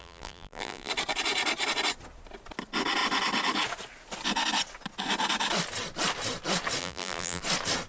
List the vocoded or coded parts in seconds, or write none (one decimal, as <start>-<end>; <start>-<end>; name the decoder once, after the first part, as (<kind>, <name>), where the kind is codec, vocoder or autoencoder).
0.0-0.9 (vocoder, BigVGAN v2); 6.8-7.4